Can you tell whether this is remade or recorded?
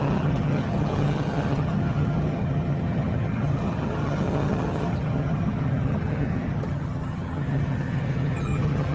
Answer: remade